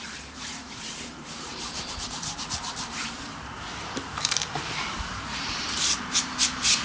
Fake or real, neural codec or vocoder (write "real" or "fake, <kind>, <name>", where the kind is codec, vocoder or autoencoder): fake, vocoder, BigVGAN v2